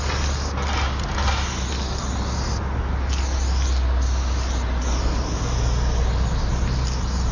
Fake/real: real